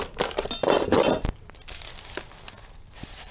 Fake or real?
real